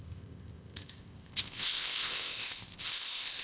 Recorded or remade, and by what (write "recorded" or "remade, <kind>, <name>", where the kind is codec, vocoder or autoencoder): remade, codec, ZipCodec